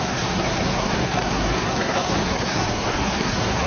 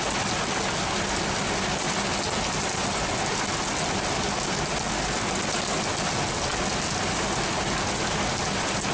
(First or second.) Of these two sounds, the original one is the second